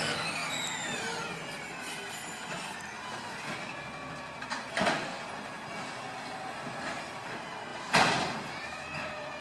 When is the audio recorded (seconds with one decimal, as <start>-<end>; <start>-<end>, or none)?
0.0-9.4